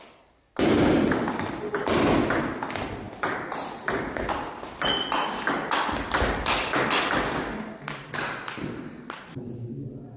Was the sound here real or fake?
real